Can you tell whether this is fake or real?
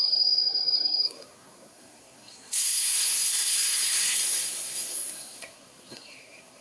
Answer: fake